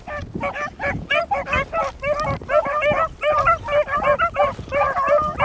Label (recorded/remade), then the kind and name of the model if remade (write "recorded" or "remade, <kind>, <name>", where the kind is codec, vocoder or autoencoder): recorded